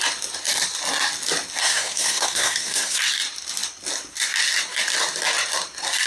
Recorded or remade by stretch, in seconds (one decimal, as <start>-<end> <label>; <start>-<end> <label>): 0.0-1.6 recorded; 1.6-3.0 remade; 3.0-6.1 recorded